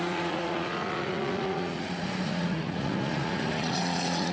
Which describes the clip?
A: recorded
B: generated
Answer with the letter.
B